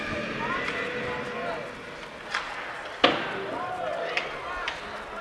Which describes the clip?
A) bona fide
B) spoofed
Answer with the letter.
A